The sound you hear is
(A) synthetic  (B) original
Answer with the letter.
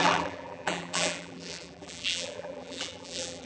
A